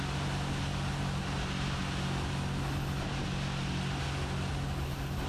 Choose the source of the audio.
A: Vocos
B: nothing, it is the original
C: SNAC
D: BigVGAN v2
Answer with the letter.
B